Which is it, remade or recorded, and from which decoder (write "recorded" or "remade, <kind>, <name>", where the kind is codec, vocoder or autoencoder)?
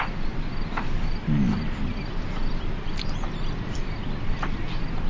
recorded